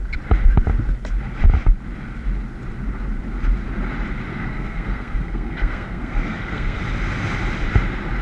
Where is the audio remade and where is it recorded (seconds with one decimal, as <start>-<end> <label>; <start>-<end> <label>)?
0.0-4.3 recorded; 4.3-6.8 remade; 6.8-8.2 recorded